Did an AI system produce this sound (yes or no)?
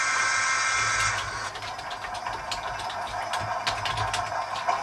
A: no